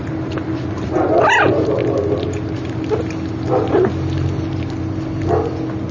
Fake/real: real